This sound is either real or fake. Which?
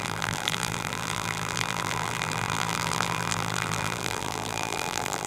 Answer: fake